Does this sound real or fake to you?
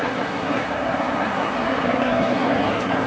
fake